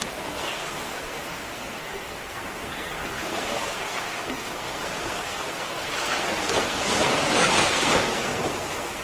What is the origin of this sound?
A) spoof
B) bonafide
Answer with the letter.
A